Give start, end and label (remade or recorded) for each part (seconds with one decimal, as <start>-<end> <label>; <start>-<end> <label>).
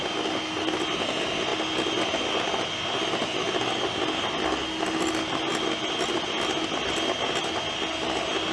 0.0-8.5 recorded